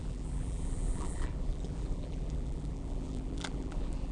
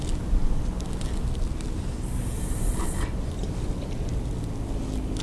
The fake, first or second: first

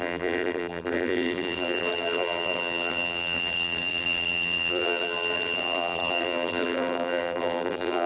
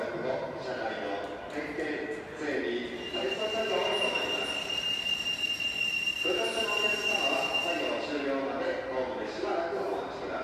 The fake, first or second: first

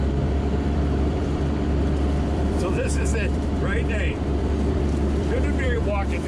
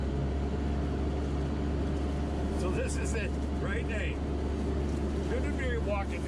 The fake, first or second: first